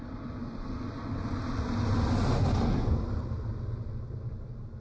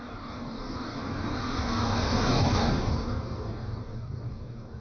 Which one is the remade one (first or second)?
second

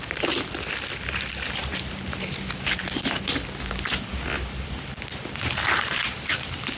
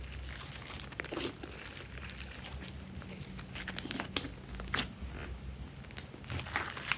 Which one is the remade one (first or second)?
first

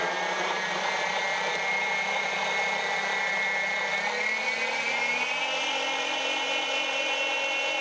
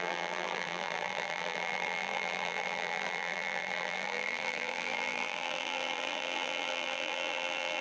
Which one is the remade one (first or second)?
second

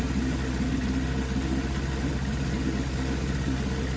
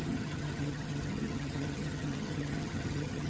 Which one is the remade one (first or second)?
second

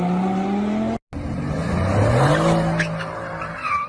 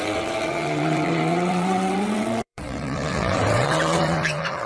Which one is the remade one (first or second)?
second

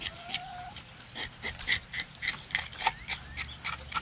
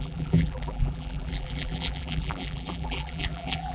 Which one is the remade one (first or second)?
second